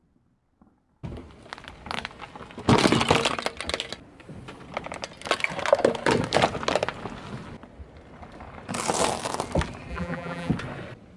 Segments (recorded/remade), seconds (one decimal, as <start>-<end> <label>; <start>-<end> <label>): 0.0-9.9 recorded; 9.9-10.5 remade; 10.5-11.2 recorded